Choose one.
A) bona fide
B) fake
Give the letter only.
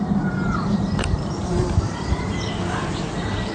B